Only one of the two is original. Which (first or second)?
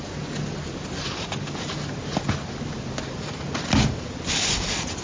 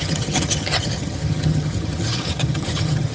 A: first